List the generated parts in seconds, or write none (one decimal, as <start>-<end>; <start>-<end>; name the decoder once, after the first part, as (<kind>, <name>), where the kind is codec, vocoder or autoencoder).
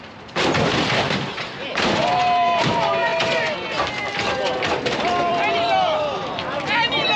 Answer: 0.0-3.1 (vocoder, BigVGAN v2); 4.0-7.2